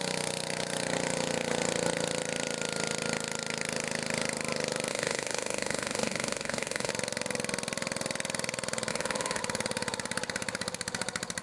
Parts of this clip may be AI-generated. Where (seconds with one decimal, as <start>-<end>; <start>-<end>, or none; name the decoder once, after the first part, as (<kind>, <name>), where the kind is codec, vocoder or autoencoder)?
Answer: 4.9-6.9 (autoencoder, DAC-VAE); 8.9-9.4